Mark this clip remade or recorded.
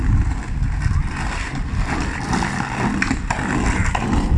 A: recorded